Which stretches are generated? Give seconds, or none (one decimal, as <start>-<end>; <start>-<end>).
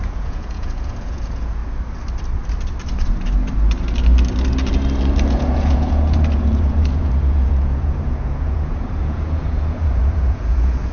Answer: 0.0-1.6; 5.3-10.9